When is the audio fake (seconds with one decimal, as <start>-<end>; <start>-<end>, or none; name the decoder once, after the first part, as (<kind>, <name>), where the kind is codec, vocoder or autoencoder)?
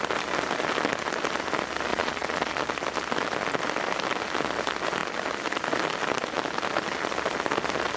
1.9-2.6 (vocoder, Vocos)